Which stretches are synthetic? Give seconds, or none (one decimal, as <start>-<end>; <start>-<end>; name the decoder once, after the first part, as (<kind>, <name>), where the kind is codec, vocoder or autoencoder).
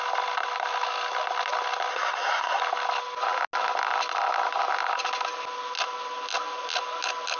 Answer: 1.9-2.6 (codec, SNAC)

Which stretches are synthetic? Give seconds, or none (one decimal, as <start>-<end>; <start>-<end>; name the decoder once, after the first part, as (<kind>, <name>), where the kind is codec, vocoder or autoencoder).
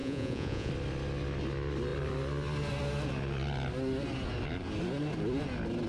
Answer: 0.0-0.7 (vocoder, Vocos)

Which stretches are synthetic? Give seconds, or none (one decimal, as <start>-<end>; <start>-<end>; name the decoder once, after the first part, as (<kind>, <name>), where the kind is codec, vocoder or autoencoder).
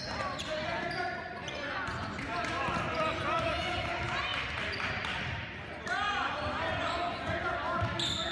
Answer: 1.3-2.2 (vocoder, Vocos); 6.7-7.5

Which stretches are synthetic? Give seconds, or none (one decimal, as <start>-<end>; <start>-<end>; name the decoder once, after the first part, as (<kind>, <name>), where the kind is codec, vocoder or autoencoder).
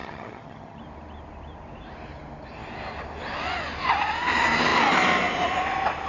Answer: 0.0-0.8 (vocoder, HiFi-GAN)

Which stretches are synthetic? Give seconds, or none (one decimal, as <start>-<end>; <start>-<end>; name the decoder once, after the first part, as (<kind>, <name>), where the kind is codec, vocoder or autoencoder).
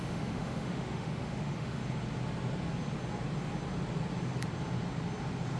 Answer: 0.0-1.8 (autoencoder, DAC-VAE)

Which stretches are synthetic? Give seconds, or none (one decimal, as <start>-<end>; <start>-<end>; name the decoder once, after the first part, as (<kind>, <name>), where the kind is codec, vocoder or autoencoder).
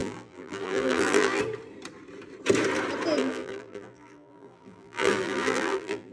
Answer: 0.0-1.4 (vocoder, BigVGAN v2); 3.2-6.1